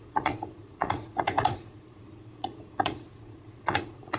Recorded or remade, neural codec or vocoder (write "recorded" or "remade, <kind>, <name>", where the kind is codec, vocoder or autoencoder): remade, vocoder, Vocos